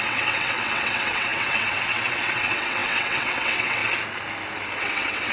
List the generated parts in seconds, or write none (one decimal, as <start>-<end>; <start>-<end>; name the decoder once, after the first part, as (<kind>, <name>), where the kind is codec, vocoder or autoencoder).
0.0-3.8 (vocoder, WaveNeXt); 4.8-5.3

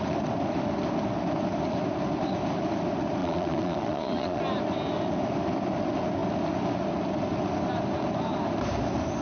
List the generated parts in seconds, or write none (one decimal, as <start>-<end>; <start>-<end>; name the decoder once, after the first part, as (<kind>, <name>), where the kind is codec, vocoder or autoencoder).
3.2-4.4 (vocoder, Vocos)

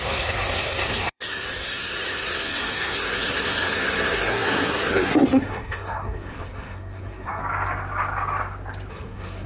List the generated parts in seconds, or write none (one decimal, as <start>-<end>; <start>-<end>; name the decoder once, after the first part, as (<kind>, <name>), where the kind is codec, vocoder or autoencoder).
0.0-7.4 (codec, SNAC); 8.9-9.5

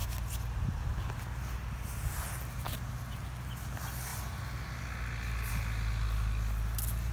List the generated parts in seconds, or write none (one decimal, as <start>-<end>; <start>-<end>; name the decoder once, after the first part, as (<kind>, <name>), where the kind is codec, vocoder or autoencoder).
none

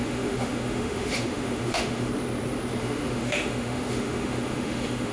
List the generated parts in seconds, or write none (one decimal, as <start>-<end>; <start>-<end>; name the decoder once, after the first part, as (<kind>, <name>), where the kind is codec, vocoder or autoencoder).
0.0-2.1 (autoencoder, DAC-VAE); 2.8-5.1